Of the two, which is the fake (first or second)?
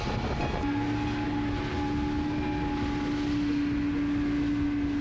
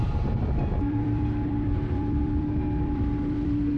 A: second